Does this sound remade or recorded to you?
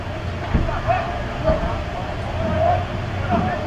recorded